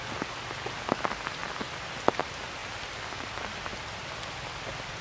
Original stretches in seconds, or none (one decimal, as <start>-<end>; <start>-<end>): 0.0-1.4; 2.2-5.0